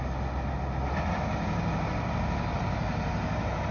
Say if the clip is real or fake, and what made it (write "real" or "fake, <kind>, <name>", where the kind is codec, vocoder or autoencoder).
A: real